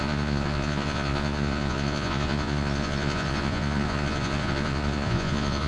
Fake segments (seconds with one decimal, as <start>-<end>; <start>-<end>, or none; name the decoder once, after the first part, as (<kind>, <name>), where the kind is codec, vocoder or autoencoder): 0.0-5.7 (vocoder, Vocos)